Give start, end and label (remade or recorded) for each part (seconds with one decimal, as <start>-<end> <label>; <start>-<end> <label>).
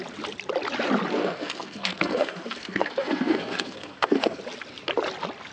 0.0-1.1 recorded; 1.1-4.4 remade; 4.4-5.5 recorded